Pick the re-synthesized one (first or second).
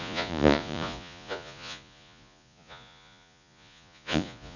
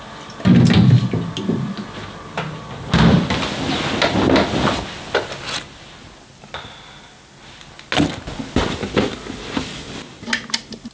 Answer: first